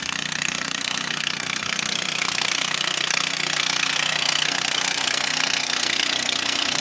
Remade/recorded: remade